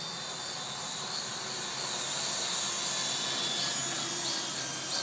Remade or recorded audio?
recorded